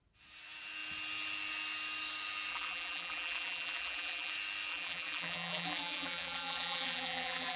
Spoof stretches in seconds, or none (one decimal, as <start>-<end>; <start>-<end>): 2.5-4.3; 4.7-7.6